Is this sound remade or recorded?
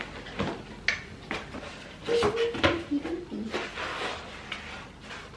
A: recorded